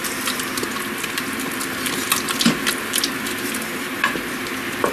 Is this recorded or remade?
recorded